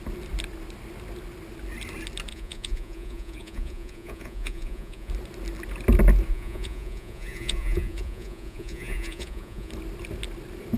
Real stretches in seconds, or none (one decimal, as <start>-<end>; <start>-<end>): 0.0-2.3; 5.1-6.3; 9.7-10.8